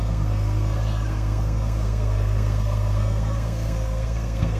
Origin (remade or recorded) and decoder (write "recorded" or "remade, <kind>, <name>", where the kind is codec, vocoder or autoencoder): remade, codec, SNAC